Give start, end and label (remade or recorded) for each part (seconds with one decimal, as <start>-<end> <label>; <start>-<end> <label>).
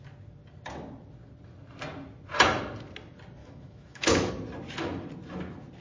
0.0-3.4 recorded; 3.4-4.3 remade; 4.3-5.8 recorded